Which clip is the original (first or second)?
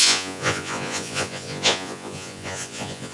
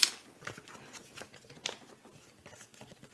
second